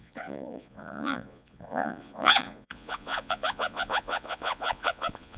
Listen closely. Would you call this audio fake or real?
fake